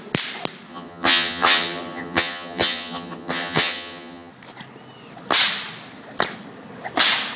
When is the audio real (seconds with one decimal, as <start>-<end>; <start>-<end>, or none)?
0.0-0.7; 4.3-7.4